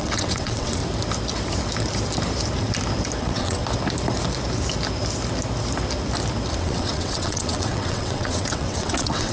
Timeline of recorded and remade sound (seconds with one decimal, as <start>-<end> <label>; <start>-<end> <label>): 0.0-0.8 remade; 0.8-3.2 recorded; 3.2-3.6 remade; 3.6-6.6 recorded; 6.6-9.3 remade